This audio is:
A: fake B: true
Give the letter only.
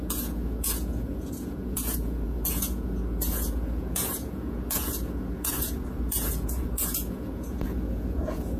A